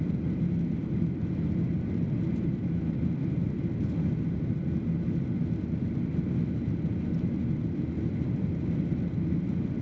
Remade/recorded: recorded